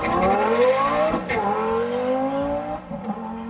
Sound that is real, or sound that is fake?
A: real